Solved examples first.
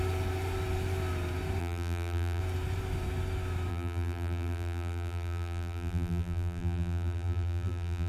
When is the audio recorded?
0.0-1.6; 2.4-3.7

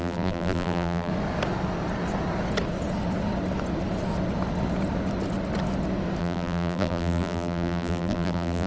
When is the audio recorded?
1.1-6.2

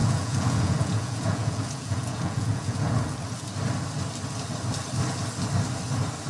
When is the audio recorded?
2.9-6.3

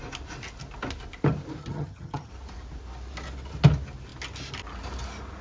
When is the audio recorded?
0.0-1.6; 2.3-5.4

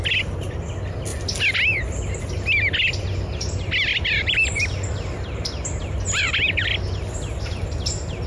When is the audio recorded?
0.0-3.9; 6.3-8.3